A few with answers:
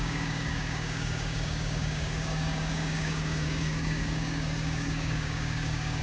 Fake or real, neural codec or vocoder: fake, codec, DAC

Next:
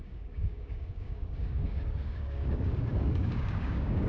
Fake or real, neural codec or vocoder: fake, codec, DAC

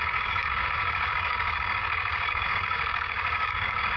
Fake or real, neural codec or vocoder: fake, codec, DAC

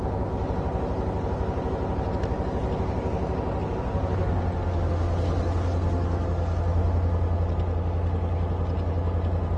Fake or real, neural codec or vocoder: real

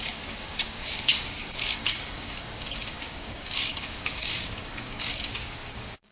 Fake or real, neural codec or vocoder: fake, codec, DAC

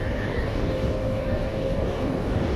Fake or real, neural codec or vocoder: fake, codec, DAC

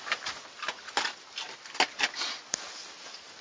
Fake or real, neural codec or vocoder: real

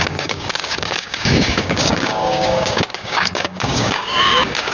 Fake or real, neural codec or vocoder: fake, codec, DAC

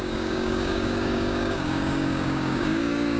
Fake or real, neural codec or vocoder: fake, codec, DAC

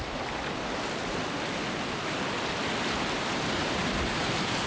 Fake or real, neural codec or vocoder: real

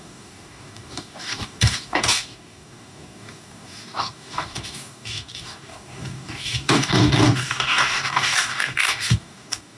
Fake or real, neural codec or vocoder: fake, codec, DAC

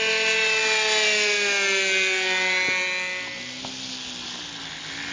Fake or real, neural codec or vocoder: real